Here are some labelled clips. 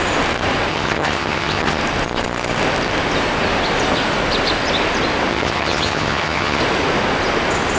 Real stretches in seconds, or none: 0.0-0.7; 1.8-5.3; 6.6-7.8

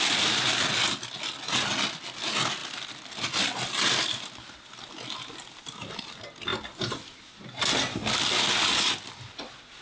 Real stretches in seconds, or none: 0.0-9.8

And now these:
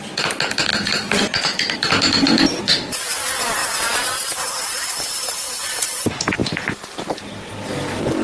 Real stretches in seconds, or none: 0.0-0.7; 1.9-3.6; 6.0-8.2